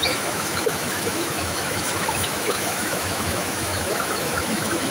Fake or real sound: fake